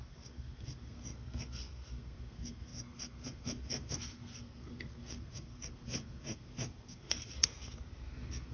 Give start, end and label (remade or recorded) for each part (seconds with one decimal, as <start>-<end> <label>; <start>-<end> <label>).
0.0-8.5 remade